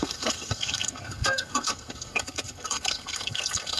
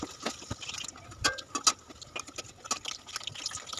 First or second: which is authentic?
second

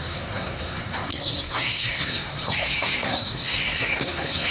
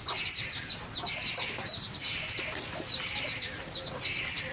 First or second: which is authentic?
second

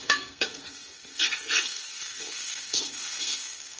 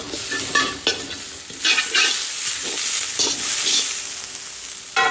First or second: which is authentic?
second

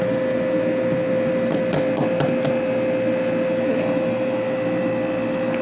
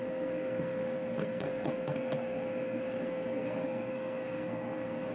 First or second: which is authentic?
first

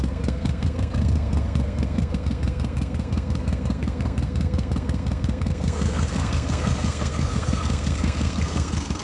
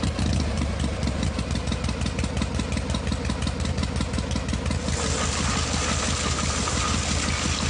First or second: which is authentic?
second